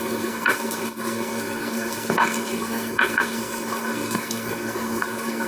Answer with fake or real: fake